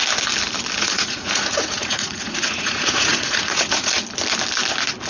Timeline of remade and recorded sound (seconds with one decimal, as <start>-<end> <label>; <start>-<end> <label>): 0.0-0.8 recorded; 0.8-3.9 remade; 3.9-5.1 recorded